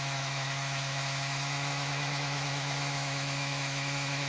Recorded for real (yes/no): no